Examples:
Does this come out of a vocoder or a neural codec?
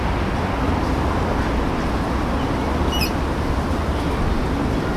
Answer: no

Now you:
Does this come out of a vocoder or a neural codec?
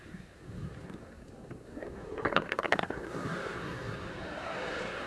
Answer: yes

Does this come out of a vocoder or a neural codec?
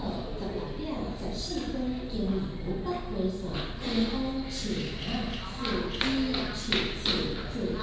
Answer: no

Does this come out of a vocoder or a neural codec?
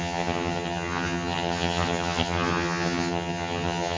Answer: yes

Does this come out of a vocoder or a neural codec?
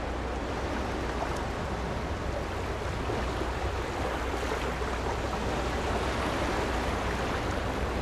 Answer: no